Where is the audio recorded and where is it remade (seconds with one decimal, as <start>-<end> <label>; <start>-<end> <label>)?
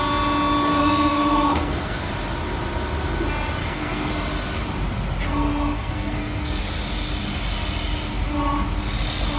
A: 0.0-0.8 recorded; 0.8-2.1 remade; 2.1-3.6 recorded; 3.6-4.1 remade; 4.1-5.3 recorded; 5.3-6.6 remade; 6.6-9.4 recorded